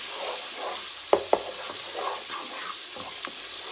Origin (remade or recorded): recorded